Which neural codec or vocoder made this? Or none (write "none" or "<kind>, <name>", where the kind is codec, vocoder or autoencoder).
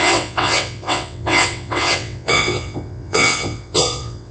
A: vocoder, WaveNeXt